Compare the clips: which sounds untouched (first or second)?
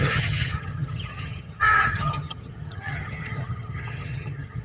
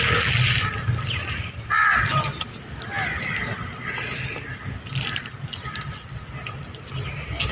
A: second